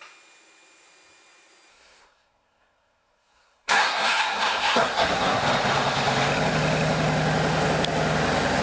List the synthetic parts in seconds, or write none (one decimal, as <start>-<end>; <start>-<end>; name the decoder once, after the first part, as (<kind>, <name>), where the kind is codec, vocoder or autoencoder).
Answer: 1.7-5.4 (codec, SNAC)